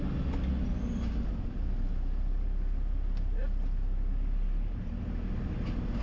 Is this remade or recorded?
recorded